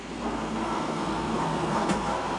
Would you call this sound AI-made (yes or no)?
yes